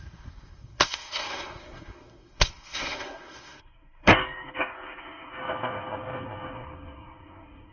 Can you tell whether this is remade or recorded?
remade